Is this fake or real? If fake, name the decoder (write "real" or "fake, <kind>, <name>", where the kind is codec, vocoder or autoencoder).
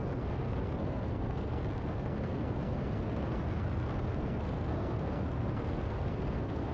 fake, codec, SNAC